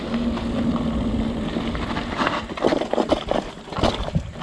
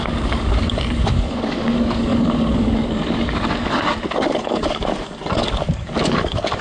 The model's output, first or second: second